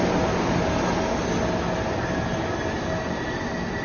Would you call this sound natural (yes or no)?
yes